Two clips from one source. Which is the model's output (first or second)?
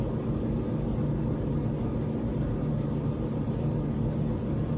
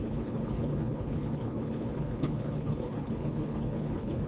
second